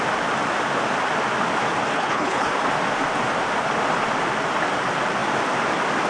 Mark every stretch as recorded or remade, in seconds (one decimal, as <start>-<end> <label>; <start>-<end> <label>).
0.0-1.9 recorded; 1.9-2.5 remade; 2.5-6.1 recorded